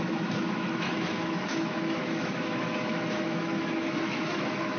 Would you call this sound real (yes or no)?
no